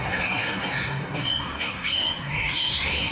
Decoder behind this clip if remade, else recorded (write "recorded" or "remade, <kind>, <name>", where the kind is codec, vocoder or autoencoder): remade, codec, SNAC